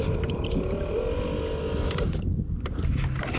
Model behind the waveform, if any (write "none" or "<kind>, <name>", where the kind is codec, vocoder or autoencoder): none